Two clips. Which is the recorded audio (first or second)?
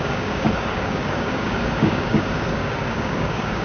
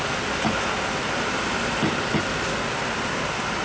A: second